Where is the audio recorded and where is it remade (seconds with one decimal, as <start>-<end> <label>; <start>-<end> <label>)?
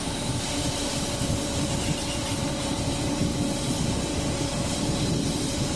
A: 0.0-3.3 remade; 3.3-4.7 recorded; 4.7-5.8 remade